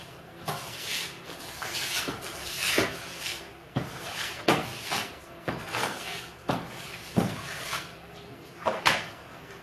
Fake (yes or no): yes